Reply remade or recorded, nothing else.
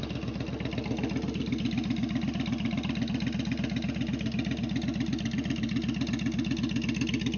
recorded